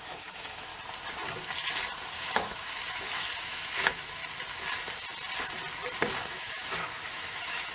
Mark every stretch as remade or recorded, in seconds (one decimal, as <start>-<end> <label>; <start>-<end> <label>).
0.0-0.7 remade; 0.7-2.1 recorded; 2.1-4.2 remade; 4.2-6.3 recorded; 6.3-7.7 remade